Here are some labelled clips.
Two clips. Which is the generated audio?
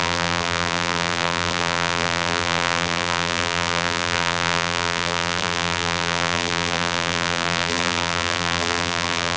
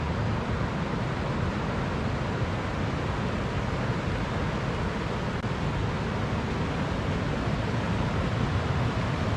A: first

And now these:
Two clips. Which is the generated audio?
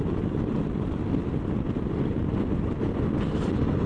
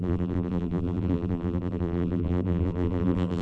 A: second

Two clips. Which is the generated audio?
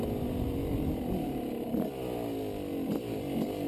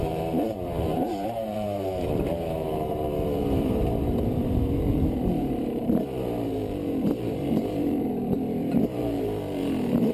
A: second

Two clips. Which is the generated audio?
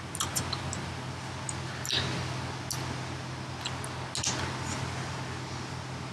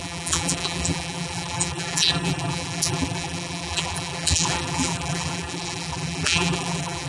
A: second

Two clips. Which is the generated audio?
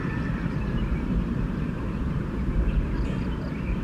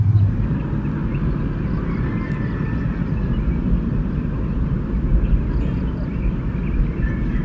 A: first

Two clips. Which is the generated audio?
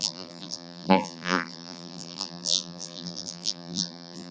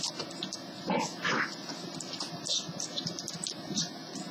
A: first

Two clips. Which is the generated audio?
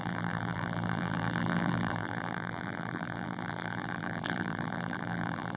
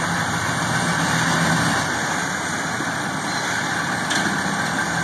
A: first